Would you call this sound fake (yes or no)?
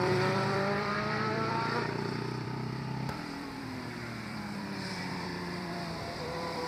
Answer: yes